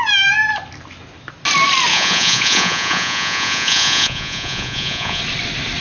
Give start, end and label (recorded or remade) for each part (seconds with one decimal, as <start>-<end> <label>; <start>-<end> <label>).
0.0-1.9 recorded; 1.9-5.2 remade; 5.2-5.8 recorded